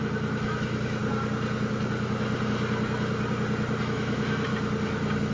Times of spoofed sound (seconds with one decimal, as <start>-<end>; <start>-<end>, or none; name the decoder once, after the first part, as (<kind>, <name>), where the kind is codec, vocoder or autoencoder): 0.0-1.0 (autoencoder, DAC-VAE); 3.8-4.5